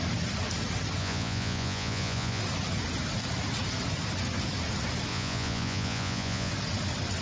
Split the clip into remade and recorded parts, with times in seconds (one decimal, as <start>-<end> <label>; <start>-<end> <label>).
0.0-1.0 recorded; 1.0-2.4 remade; 2.4-5.1 recorded; 5.1-6.5 remade; 6.5-7.2 recorded